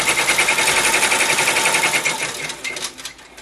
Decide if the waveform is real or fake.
real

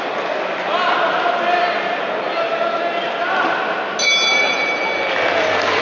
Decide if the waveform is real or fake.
real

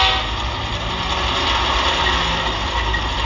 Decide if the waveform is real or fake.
real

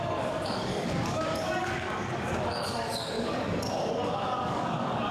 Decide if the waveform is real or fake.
fake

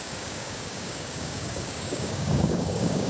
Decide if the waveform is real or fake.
fake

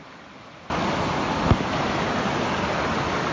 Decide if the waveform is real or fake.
real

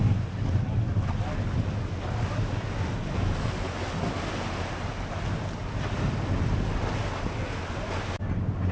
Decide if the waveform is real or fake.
real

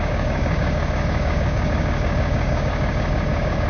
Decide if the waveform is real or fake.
fake